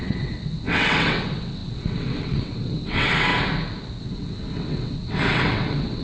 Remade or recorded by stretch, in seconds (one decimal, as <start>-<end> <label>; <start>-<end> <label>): 0.0-3.3 remade; 3.3-4.0 recorded; 4.0-6.0 remade